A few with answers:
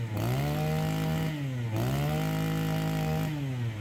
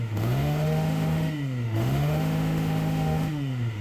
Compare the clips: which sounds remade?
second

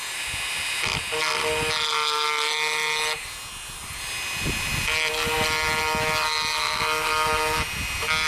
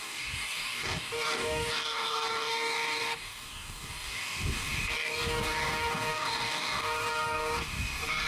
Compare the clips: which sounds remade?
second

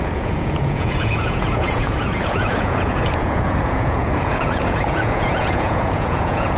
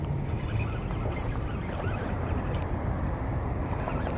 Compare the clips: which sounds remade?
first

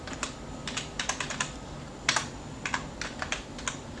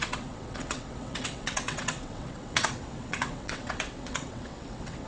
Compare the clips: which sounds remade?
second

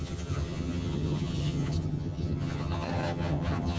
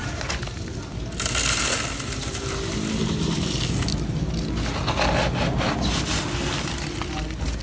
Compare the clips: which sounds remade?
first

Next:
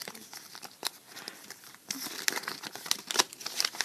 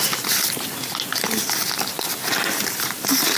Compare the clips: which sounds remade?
first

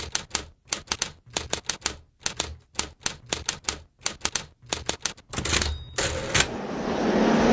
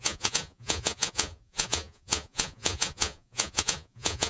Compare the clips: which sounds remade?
second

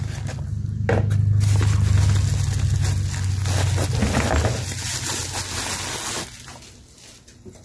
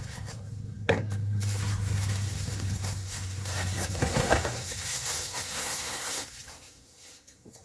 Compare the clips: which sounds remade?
second